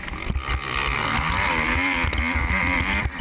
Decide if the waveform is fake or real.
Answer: real